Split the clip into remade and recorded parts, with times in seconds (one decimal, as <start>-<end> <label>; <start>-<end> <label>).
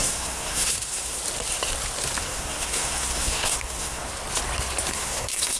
0.0-1.2 remade; 1.2-2.2 recorded; 2.2-4.0 remade; 4.0-4.9 recorded; 4.9-5.6 remade